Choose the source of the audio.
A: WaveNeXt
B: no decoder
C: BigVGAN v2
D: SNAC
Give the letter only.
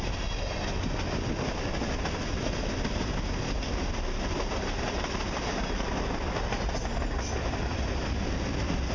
B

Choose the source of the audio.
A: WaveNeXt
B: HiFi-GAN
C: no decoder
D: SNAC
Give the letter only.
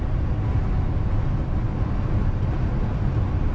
C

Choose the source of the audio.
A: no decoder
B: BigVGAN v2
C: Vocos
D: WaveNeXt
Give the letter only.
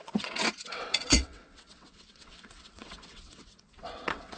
D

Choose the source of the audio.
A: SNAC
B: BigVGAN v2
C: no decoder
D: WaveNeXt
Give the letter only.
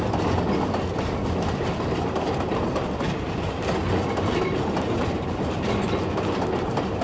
C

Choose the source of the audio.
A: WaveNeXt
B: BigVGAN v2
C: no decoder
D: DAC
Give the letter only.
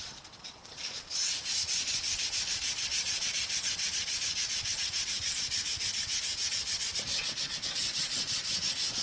A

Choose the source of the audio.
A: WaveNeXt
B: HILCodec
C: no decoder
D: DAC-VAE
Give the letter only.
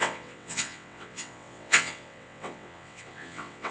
A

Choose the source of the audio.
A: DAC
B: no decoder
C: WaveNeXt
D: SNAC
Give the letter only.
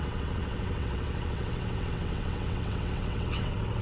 C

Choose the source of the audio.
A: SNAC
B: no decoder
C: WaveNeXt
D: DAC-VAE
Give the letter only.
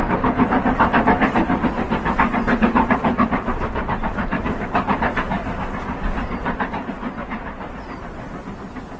B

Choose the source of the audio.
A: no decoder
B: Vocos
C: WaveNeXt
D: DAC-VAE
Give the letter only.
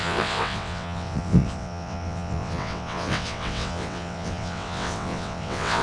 C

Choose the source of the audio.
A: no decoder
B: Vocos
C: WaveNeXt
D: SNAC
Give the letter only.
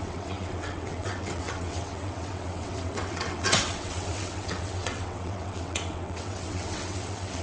C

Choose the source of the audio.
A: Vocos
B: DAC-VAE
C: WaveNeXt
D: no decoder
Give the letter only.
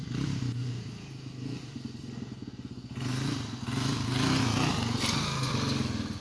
D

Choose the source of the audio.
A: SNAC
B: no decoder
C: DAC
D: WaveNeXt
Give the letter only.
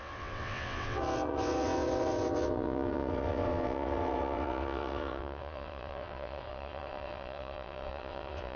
D